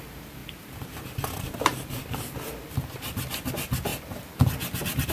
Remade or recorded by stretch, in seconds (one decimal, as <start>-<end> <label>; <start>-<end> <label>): 0.0-5.1 recorded